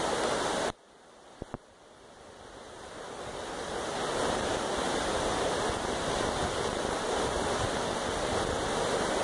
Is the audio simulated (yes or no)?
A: no